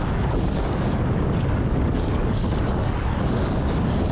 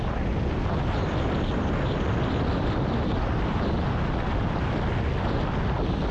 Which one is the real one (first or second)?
second